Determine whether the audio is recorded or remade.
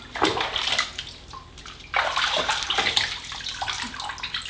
recorded